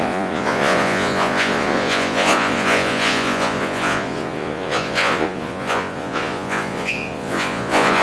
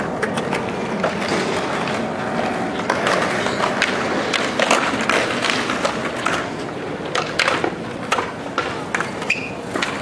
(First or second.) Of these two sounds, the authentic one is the second